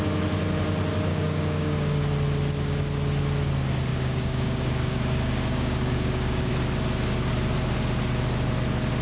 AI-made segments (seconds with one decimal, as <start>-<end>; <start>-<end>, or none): 1.1-2.0; 3.9-6.5

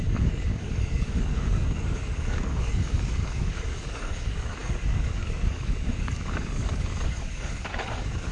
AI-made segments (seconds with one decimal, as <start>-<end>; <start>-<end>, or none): 0.0-8.3